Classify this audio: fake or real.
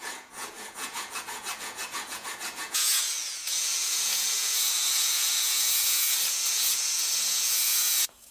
fake